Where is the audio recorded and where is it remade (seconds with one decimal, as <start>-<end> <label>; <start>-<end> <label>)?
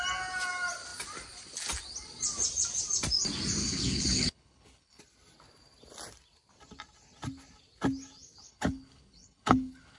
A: 0.0-3.6 recorded; 3.6-5.0 remade; 5.0-8.5 recorded; 8.5-10.0 remade